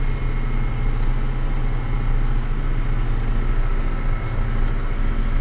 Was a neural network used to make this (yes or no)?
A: no